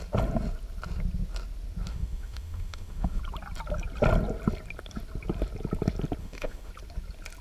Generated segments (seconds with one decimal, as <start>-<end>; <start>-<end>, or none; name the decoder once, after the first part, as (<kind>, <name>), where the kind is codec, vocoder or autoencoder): 1.9-3.2 (autoencoder, DAC-VAE); 6.2-6.7